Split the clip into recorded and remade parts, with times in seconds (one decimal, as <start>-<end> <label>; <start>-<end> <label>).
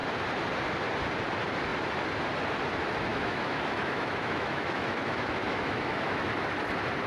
0.0-3.1 recorded; 3.1-6.3 remade; 6.3-7.1 recorded